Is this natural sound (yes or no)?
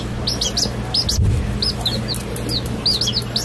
yes